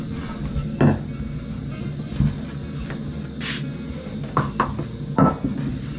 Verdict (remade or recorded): recorded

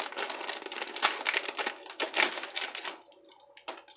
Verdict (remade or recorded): recorded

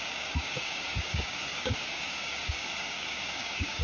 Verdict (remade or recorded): remade